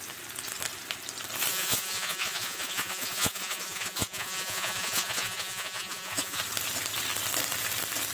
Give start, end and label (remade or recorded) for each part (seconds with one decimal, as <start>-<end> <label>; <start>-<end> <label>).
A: 0.0-1.5 recorded; 1.5-6.4 remade; 6.4-8.1 recorded